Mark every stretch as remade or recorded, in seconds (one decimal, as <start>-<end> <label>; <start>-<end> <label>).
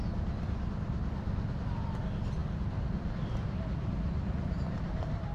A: 0.0-5.3 recorded